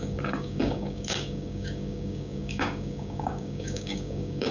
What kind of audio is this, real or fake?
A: fake